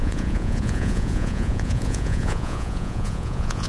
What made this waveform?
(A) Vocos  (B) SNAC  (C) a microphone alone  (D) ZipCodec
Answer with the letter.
A